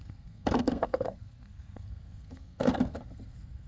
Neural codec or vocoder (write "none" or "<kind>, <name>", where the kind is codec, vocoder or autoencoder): codec, SNAC